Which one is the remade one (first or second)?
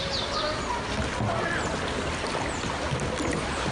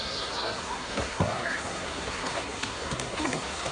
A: second